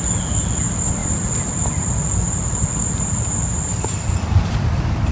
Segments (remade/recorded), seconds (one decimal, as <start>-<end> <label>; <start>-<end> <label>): 0.0-1.0 recorded; 1.0-1.5 remade; 1.5-3.5 recorded; 3.5-4.1 remade; 4.1-5.1 recorded